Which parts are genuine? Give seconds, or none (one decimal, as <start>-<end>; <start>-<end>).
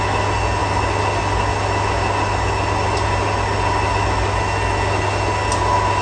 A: 0.0-6.0